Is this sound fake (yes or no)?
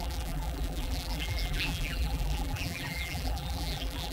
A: yes